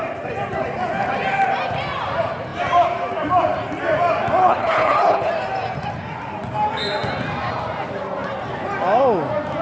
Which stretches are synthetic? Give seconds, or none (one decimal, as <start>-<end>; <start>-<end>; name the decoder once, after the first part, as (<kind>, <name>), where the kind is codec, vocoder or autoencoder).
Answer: 4.4-5.3 (codec, HILCodec)